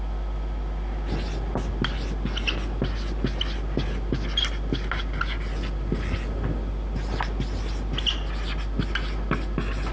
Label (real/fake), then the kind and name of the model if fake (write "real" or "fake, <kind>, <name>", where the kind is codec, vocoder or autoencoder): real